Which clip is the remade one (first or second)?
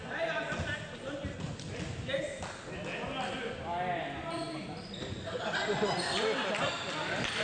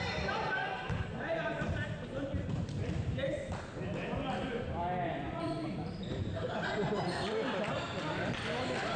second